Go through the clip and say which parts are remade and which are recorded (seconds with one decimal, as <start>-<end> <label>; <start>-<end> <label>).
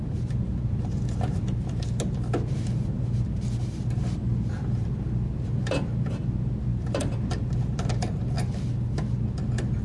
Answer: 0.0-0.5 recorded; 0.5-1.7 remade; 1.7-4.3 recorded; 4.3-6.1 remade; 6.1-6.7 recorded; 6.7-7.3 remade; 7.3-9.8 recorded